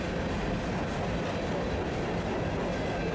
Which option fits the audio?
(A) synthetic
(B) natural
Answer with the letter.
B